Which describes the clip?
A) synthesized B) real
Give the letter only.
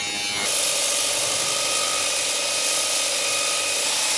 B